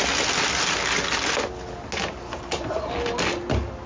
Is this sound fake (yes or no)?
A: no